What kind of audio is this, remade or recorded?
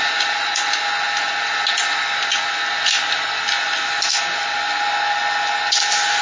recorded